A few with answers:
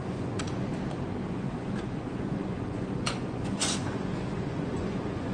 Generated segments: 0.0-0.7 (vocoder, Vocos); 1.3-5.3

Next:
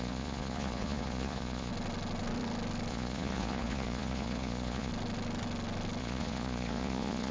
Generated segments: 0.0-1.7 (vocoder, Vocos); 2.9-4.9; 6.0-7.3

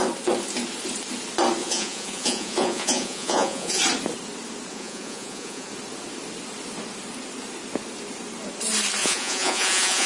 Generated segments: 1.6-3.8 (vocoder, Vocos); 4.7-5.7; 9.0-10.1

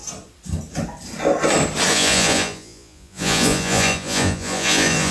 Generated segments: 1.9-5.1 (vocoder, Vocos)

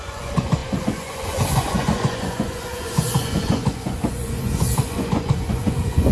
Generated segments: 0.0-6.1 (vocoder, Vocos)